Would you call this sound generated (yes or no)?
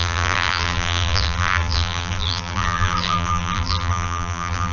yes